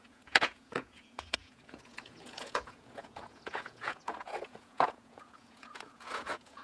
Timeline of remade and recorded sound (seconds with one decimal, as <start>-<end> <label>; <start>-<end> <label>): 0.0-6.6 remade